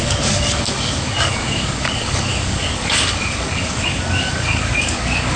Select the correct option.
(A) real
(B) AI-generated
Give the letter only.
B